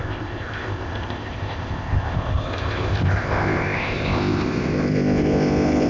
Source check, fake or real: fake